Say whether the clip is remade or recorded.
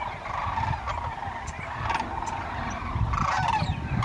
recorded